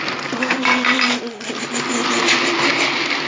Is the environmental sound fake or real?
real